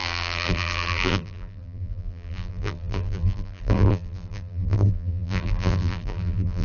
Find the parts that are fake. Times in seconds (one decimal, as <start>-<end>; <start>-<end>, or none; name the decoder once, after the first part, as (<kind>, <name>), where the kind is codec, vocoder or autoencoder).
0.0-6.6 (vocoder, BigVGAN v2)